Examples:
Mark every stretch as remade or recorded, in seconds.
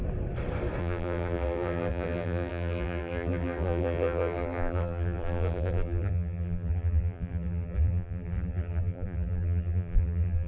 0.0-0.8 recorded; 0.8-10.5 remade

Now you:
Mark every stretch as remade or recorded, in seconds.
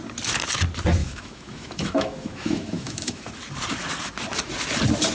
0.0-1.0 recorded; 1.0-3.2 remade; 3.2-5.1 recorded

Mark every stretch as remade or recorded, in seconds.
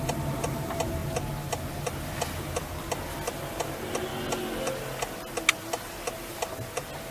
0.0-1.0 remade; 1.0-3.3 recorded; 3.3-4.1 remade; 4.1-7.1 recorded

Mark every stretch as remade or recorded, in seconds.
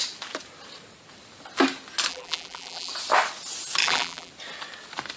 0.0-2.1 recorded; 2.1-2.9 remade; 2.9-3.8 recorded; 3.8-4.3 remade; 4.3-5.2 recorded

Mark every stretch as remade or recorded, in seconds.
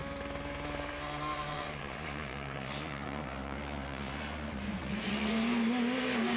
0.0-1.5 recorded; 1.5-5.3 remade; 5.3-6.4 recorded